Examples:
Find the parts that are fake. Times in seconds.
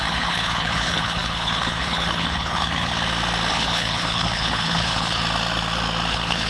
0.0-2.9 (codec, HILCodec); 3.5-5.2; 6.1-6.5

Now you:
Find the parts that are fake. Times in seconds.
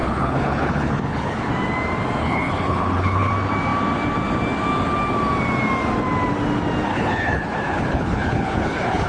0.0-1.5 (codec, HILCodec); 2.2-3.3; 6.9-9.1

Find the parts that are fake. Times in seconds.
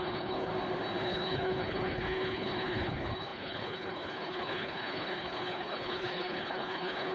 0.0-0.5 (codec, HILCodec); 1.0-7.1